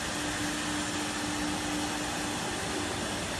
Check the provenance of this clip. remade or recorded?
recorded